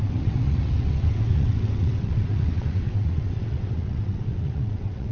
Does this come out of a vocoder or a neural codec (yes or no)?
yes